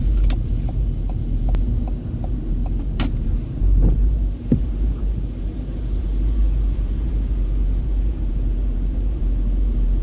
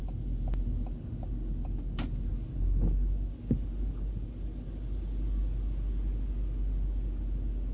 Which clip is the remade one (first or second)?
first